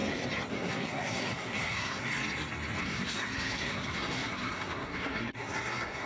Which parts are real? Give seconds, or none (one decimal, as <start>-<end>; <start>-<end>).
0.0-0.5; 2.1-2.8